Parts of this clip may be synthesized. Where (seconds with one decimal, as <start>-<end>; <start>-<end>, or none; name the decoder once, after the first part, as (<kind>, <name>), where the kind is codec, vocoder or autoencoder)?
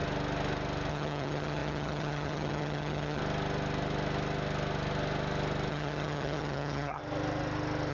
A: 0.9-3.2 (vocoder, HiFi-GAN); 5.7-7.0